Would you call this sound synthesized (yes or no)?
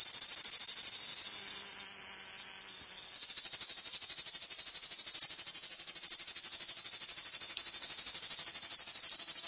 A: no